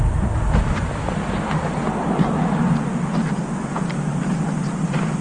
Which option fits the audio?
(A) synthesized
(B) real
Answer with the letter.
B